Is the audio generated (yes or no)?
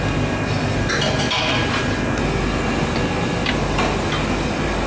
no